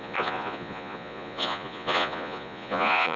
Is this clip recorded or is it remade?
remade